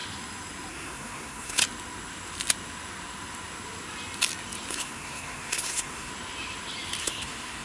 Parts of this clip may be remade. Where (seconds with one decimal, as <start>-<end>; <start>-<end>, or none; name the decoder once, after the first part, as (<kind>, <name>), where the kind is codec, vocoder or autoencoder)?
0.7-1.6 (codec, SNAC); 4.7-6.1; 7.0-7.6